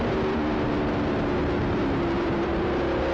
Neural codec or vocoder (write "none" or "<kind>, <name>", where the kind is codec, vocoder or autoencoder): vocoder, BigVGAN v2